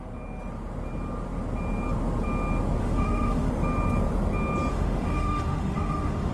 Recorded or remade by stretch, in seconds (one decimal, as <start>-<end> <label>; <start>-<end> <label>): 0.0-2.8 recorded; 2.8-3.5 remade; 3.5-4.7 recorded; 4.7-6.3 remade